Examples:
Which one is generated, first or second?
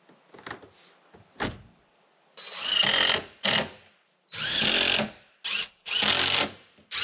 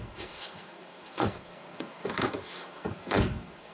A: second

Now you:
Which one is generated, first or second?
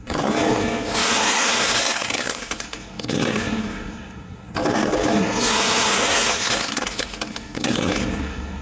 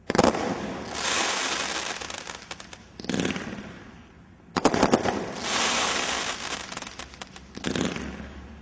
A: first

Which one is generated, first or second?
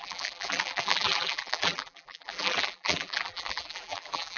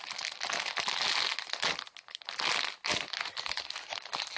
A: first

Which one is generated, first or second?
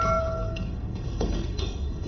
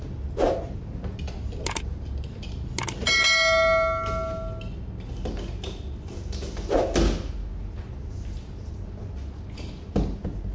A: first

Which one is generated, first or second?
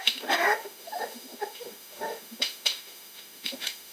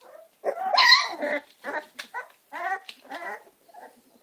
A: first